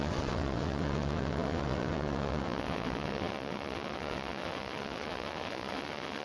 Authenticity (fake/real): fake